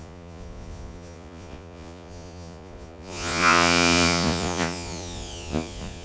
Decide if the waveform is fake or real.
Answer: fake